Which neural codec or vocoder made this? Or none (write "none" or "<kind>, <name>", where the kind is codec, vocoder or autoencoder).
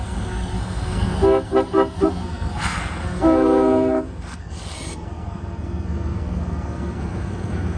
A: codec, SNAC